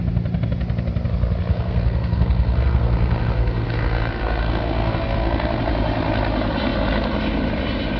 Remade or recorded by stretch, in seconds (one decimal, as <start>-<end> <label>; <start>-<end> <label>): 0.0-1.5 recorded; 1.5-5.6 remade; 5.6-8.0 recorded